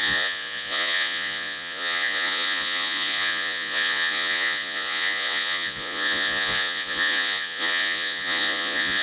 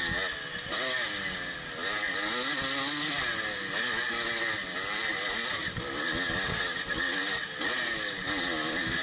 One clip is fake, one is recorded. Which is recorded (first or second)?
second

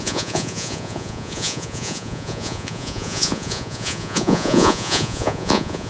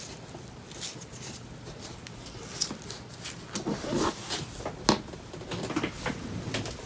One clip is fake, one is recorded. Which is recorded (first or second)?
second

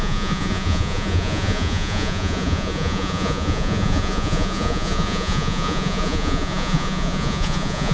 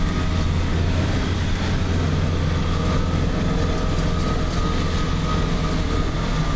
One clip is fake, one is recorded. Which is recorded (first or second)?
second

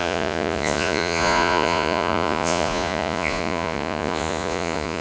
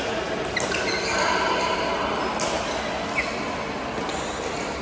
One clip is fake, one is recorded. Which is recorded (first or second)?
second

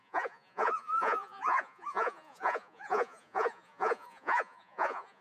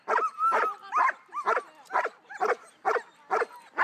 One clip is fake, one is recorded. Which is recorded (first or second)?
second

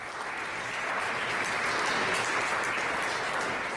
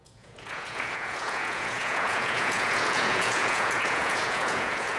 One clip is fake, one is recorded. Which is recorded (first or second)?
first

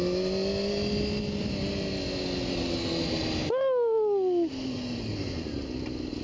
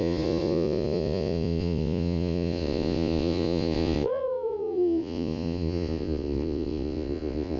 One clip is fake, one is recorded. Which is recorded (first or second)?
first